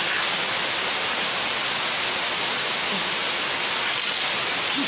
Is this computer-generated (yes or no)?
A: no